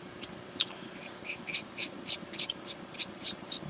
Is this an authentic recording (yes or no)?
no